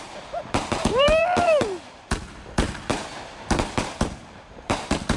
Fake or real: fake